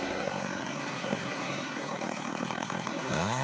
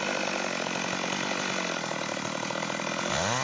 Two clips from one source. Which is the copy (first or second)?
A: first